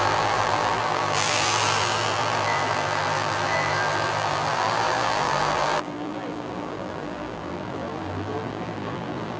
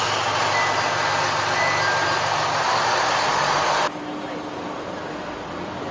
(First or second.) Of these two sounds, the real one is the second